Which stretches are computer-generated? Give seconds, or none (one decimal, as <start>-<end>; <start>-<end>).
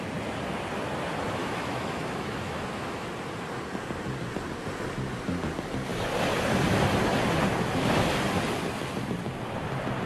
1.4-3.1